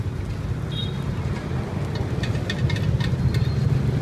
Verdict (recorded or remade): recorded